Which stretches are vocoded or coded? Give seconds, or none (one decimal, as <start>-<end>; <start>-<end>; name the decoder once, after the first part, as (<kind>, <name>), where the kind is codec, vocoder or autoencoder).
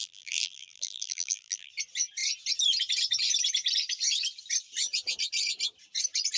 0.0-1.7 (vocoder, BigVGAN v2)